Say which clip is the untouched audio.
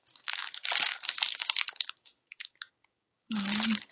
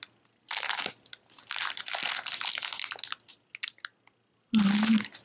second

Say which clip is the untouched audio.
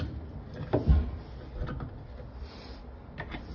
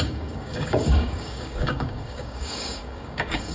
first